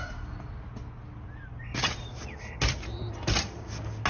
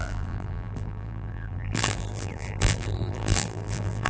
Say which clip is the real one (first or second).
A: first